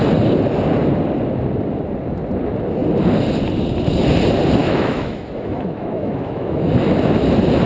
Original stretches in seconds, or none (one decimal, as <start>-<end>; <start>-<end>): 0.0-4.6; 6.7-7.7